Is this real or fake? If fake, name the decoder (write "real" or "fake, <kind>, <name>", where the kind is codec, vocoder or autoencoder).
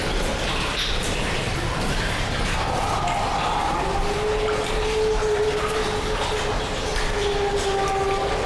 real